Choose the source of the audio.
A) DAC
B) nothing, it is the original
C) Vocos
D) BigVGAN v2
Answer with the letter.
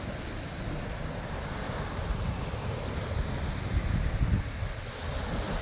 B